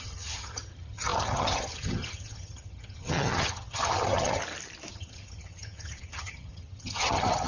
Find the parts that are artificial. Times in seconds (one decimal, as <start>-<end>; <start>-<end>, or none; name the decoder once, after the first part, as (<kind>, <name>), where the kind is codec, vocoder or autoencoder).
0.0-4.4 (vocoder, HiFi-GAN); 4.9-7.5

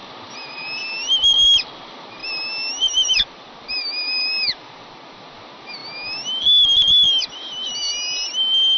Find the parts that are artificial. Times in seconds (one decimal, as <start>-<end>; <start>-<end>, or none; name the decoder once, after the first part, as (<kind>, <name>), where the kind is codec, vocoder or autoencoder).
none

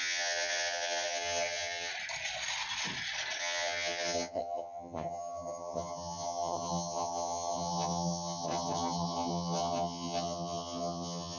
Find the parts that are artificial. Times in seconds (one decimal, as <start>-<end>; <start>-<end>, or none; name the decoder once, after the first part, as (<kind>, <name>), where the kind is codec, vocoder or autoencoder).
0.0-1.9 (vocoder, HiFi-GAN); 3.4-11.4